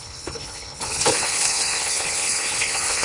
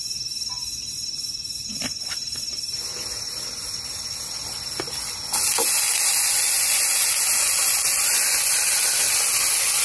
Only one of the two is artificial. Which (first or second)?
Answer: first